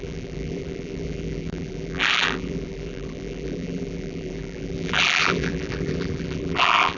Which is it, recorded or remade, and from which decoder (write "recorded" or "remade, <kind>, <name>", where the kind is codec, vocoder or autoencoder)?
remade, vocoder, BigVGAN v2